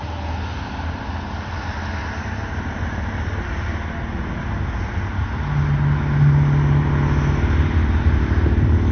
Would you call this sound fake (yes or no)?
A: no